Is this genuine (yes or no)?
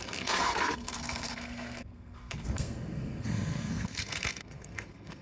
no